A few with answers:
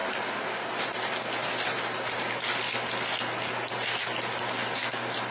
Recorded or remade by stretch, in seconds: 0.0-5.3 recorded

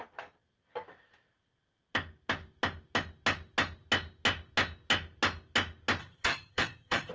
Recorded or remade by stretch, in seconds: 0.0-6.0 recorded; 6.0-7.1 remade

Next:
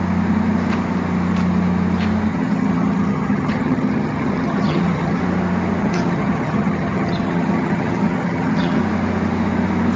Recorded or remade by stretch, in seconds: 0.0-2.3 recorded; 2.3-5.2 remade; 5.2-5.8 recorded; 5.8-8.8 remade; 8.8-10.0 recorded

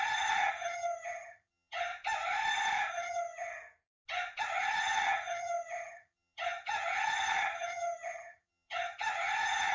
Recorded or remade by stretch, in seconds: 0.0-1.9 remade; 1.9-2.9 recorded; 2.9-3.5 remade; 3.5-4.4 recorded; 4.4-9.7 remade